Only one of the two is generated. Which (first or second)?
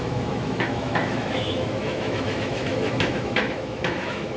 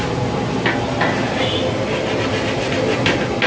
first